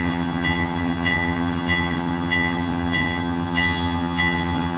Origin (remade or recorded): remade